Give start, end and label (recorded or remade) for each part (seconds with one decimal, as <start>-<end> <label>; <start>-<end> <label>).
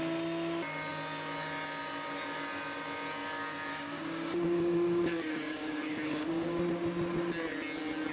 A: 0.0-3.7 recorded; 3.7-6.6 remade; 6.6-8.1 recorded